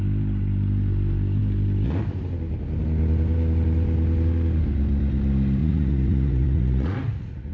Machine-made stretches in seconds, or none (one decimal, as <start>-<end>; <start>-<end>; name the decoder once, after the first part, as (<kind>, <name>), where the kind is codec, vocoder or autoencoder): 5.6-7.5 (vocoder, Vocos)